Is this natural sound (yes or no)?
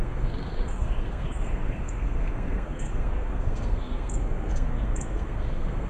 no